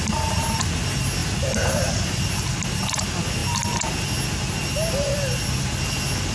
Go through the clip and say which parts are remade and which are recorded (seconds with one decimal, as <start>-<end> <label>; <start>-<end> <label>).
0.0-6.3 recorded